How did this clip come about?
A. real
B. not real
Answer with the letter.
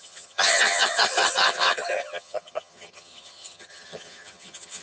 B